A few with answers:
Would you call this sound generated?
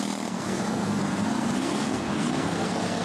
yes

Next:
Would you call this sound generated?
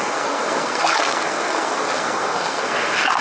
yes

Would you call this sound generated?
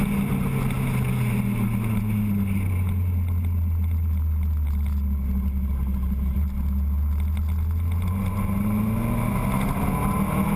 no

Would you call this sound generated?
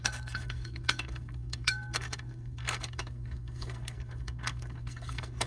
yes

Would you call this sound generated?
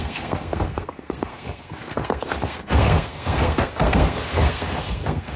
yes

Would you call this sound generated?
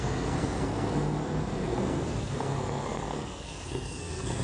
yes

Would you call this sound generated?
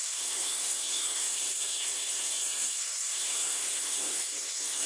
yes